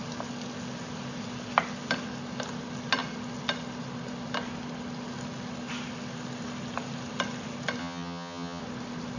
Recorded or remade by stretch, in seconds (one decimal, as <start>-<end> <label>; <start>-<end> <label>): 0.0-7.8 recorded; 7.8-8.6 remade; 8.6-9.2 recorded